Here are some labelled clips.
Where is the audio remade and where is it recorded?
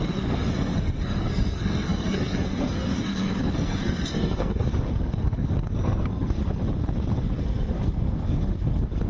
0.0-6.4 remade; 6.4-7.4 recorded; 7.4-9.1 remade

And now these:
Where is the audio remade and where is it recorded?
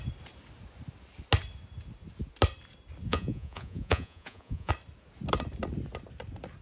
0.0-3.1 recorded; 3.1-4.7 remade; 4.7-6.6 recorded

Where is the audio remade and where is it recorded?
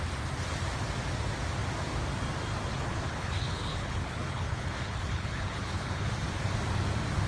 0.0-2.7 recorded; 2.7-6.1 remade; 6.1-7.3 recorded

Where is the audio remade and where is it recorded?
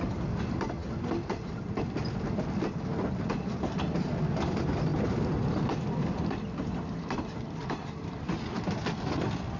0.0-9.6 recorded